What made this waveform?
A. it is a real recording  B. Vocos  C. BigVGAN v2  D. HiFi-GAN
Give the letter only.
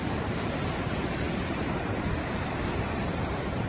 C